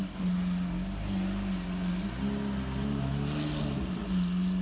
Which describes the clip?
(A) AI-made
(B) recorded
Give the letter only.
B